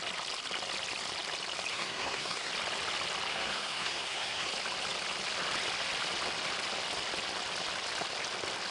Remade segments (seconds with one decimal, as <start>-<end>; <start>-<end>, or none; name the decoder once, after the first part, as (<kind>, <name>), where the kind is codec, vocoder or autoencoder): 1.7-2.5 (codec, SNAC); 3.3-4.5